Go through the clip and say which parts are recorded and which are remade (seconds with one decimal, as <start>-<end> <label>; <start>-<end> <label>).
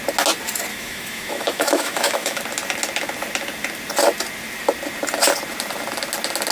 0.0-0.7 recorded; 0.7-2.4 remade; 2.4-6.5 recorded